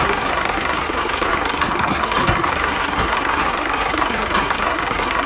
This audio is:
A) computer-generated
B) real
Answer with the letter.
A